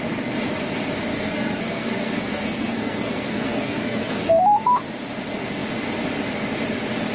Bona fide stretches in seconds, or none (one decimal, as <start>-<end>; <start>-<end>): 0.0-1.1; 4.4-7.1